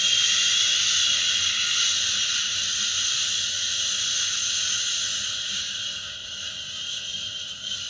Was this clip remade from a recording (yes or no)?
no